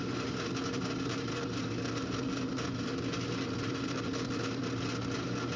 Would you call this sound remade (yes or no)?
no